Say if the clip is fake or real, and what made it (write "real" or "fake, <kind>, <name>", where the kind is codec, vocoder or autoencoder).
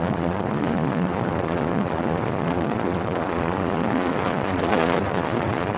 fake, vocoder, Vocos